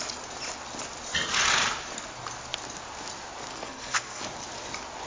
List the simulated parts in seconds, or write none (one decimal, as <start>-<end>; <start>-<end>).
3.5-4.2

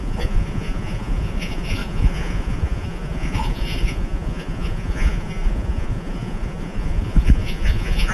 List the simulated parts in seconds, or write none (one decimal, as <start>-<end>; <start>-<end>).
0.0-8.1